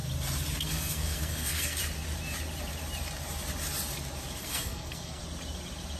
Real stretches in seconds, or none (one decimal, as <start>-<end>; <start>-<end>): 0.0-0.6; 1.8-4.4; 5.2-6.0